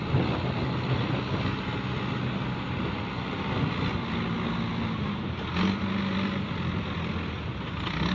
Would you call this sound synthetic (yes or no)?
no